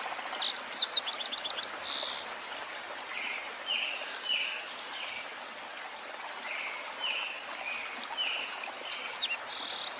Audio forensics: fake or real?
real